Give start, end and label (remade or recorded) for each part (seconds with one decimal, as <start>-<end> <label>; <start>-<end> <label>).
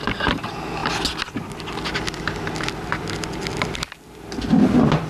0.0-5.1 recorded